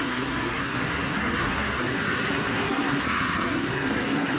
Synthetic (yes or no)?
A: yes